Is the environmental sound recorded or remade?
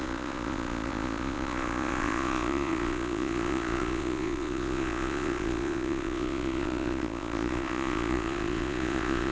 remade